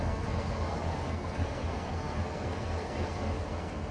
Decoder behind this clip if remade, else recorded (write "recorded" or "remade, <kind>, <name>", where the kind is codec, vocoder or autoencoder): remade, codec, SNAC